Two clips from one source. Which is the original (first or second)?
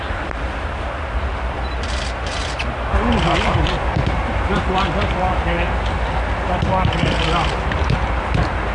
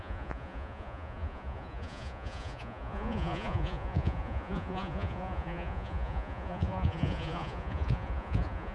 first